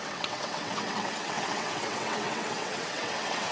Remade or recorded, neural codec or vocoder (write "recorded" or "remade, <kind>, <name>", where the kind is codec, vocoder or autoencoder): remade, vocoder, WaveNeXt